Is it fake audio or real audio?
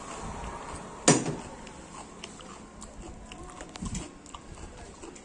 real